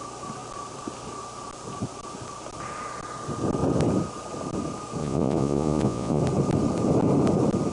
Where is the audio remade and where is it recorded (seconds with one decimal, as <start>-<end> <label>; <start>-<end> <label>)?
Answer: 0.0-5.0 recorded; 5.0-6.2 remade; 6.2-7.7 recorded